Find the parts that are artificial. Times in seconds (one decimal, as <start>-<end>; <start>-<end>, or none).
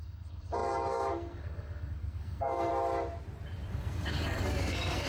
0.0-2.7; 3.7-5.1